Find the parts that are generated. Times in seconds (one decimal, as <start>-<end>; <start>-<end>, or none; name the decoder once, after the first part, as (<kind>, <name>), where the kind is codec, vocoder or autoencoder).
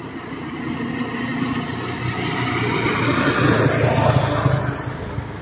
none